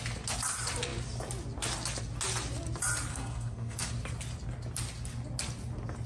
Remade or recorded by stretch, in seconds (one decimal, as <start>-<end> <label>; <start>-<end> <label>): 0.0-3.1 recorded; 3.1-3.9 remade; 3.9-6.1 recorded

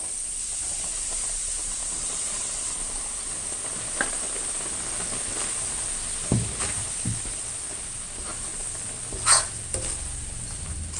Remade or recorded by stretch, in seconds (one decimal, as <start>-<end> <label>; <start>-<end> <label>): 0.0-1.8 recorded; 1.8-3.6 remade; 3.6-6.3 recorded; 6.3-7.0 remade; 7.0-11.0 recorded